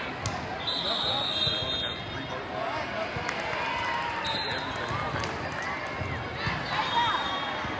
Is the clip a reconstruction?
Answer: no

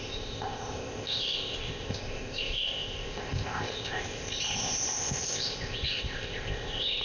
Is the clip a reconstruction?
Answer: yes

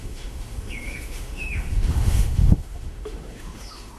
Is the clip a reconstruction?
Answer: yes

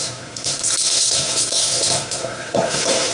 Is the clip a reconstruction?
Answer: yes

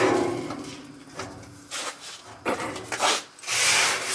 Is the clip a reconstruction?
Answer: no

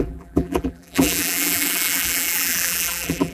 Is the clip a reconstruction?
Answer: yes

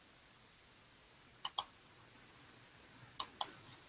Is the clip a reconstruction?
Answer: no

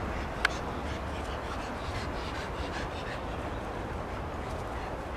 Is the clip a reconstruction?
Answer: no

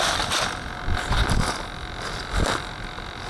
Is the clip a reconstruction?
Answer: no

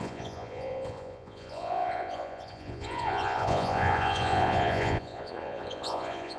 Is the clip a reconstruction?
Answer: yes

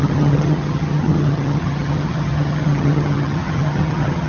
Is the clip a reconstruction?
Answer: yes